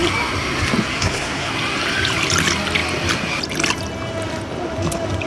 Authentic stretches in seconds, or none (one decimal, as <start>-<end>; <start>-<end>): 0.0-0.9; 1.5-5.3